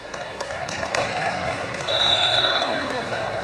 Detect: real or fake fake